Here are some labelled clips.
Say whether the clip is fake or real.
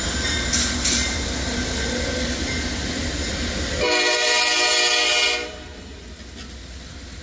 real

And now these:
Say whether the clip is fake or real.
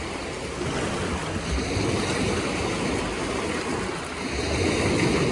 real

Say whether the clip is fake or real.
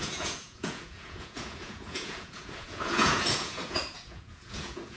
fake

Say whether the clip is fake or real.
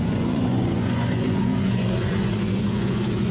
fake